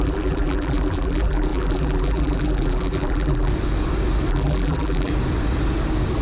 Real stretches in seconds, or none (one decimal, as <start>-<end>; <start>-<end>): 3.5-4.3; 5.1-6.2